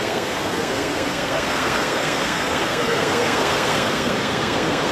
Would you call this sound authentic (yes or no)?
no